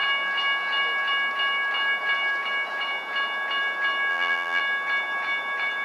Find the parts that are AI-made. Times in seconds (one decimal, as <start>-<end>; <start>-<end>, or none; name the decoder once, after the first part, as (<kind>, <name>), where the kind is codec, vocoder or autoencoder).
4.1-4.6 (vocoder, BigVGAN v2)